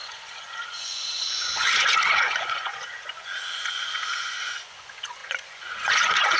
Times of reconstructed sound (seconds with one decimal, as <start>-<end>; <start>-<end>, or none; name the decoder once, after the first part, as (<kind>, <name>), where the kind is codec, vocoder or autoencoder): 0.0-6.4 (vocoder, Vocos)